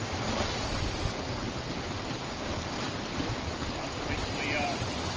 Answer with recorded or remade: recorded